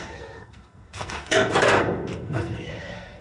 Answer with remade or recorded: remade